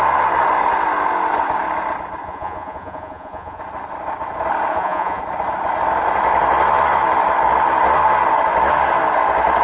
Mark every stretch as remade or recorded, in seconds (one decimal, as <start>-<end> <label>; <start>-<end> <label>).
0.0-2.2 recorded; 2.2-3.6 remade; 3.6-4.7 recorded; 4.7-5.2 remade; 5.2-9.6 recorded